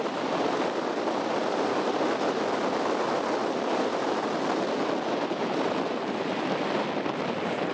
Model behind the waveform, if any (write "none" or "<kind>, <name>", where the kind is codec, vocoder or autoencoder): none